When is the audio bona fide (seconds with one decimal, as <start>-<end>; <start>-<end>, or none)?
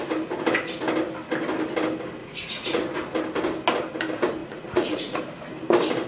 0.0-2.2; 2.8-4.4; 5.2-6.1